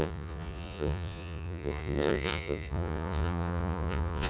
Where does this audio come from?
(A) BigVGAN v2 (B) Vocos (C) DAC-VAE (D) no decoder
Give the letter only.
B